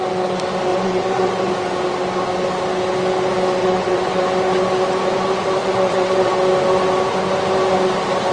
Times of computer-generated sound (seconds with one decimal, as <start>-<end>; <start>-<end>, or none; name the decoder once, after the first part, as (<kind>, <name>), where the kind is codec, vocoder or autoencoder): 0.7-1.5 (vocoder, WaveNeXt); 3.6-4.2; 5.6-6.3